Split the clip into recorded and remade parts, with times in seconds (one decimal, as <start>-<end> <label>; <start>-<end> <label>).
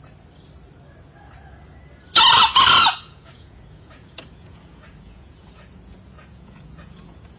0.0-2.8 recorded; 2.8-7.4 remade